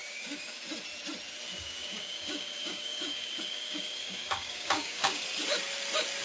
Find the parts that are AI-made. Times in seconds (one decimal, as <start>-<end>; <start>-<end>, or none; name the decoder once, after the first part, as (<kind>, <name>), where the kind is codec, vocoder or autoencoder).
0.0-0.6 (codec, DAC); 1.5-5.2